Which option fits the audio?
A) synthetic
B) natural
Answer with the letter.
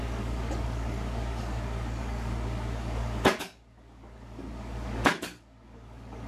A